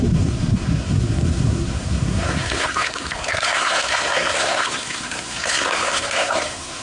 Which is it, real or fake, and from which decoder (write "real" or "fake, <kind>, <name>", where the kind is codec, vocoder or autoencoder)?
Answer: fake, codec, SNAC